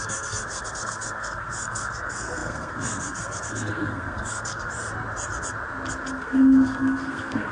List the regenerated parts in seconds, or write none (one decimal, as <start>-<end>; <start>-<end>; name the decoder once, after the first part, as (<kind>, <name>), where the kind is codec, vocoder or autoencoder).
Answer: 0.0-4.7 (codec, SNAC); 6.1-7.5

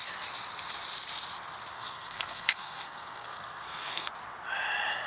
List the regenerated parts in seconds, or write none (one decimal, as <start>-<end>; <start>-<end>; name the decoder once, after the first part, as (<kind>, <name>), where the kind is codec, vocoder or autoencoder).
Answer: 1.7-4.1 (codec, SNAC)